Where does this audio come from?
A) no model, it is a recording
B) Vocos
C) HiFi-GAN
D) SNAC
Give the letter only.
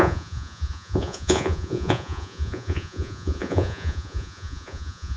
B